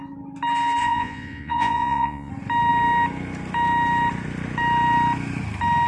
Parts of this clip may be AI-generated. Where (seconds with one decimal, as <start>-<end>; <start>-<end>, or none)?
0.8-2.3